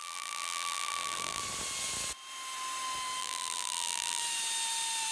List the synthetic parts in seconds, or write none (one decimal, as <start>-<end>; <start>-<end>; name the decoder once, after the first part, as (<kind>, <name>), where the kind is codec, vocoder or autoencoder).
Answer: 0.0-1.4 (vocoder, BigVGAN v2); 3.2-4.2